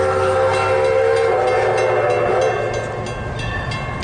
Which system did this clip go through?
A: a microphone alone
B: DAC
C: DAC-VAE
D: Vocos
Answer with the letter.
A